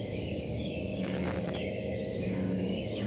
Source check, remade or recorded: remade